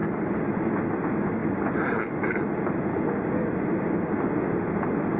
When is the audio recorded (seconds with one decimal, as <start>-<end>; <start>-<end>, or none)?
0.0-5.2